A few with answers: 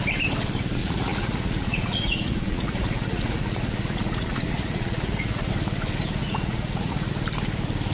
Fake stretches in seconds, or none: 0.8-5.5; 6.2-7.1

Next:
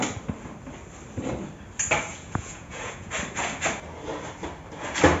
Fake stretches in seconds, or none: 2.1-3.1

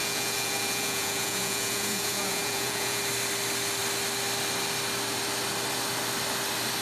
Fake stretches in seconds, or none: 0.0-3.0

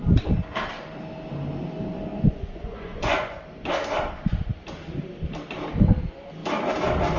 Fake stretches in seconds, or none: 2.1-3.4